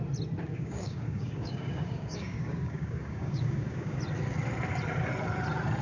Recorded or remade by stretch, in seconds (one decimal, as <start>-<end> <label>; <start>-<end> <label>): 0.0-0.5 recorded; 0.5-4.0 remade; 4.0-5.8 recorded